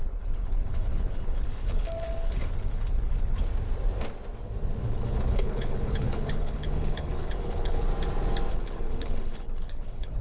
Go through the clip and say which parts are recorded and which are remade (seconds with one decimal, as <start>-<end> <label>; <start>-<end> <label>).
0.0-3.5 remade; 3.5-4.8 recorded; 4.8-7.9 remade; 7.9-8.5 recorded; 8.5-10.2 remade